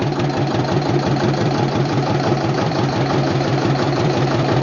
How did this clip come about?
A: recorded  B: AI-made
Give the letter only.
B